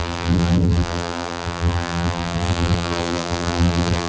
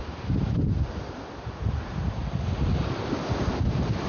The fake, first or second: first